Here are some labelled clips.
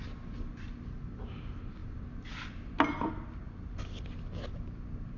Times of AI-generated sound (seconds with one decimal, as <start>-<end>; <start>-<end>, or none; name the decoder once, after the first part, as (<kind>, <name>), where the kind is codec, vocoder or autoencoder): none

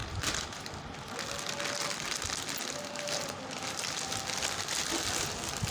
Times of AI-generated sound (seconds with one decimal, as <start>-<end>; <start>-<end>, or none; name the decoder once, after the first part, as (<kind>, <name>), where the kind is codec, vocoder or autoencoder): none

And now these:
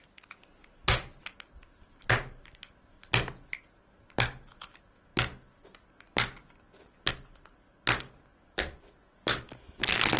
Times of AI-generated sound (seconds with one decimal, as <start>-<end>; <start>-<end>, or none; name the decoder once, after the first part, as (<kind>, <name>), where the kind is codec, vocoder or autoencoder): 8.3-9.4 (vocoder, BigVGAN v2)